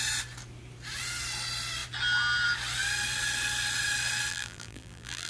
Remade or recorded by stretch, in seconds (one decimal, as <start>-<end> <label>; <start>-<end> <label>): 0.0-4.3 recorded; 4.3-5.3 remade